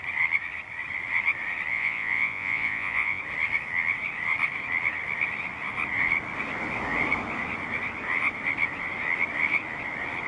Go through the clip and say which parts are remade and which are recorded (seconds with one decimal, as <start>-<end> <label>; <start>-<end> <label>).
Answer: 0.0-1.7 recorded; 1.7-3.2 remade; 3.2-10.3 recorded